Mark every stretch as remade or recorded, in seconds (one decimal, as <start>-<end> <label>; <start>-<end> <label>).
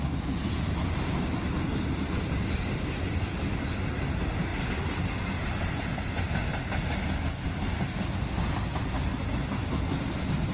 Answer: 0.0-10.5 recorded